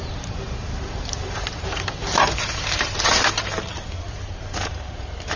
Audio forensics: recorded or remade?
remade